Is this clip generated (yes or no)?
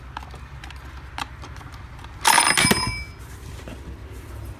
no